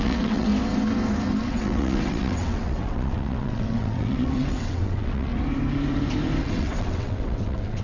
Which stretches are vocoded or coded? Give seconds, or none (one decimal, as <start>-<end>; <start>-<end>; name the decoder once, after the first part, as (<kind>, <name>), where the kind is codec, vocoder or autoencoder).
0.0-0.5 (vocoder, WaveNeXt); 1.4-5.3; 6.4-7.8

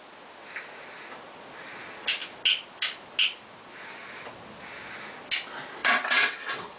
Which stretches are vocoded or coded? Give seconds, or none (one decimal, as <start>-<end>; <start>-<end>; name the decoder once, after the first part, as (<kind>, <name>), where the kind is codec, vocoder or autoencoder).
5.8-6.8 (vocoder, WaveNeXt)